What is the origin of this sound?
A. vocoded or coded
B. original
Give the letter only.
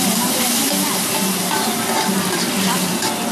B